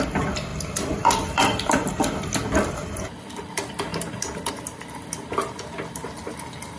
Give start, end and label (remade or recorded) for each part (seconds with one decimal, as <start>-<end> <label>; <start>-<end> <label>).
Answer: 0.0-6.8 recorded